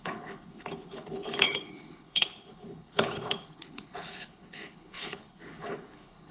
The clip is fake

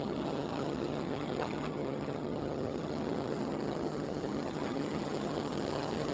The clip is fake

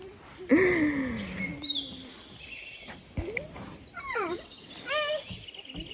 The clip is real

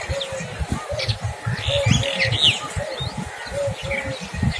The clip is real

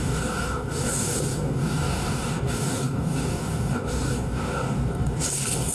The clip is fake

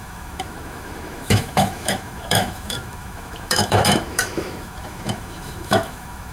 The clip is fake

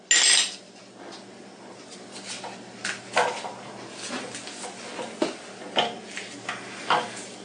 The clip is real